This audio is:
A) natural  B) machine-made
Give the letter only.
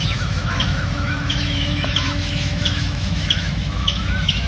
B